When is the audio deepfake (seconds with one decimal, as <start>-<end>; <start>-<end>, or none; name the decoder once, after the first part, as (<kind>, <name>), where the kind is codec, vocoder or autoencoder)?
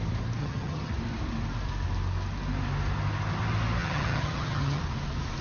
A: 0.4-0.9 (vocoder, HiFi-GAN); 3.8-4.8